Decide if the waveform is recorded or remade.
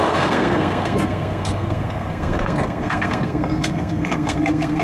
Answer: remade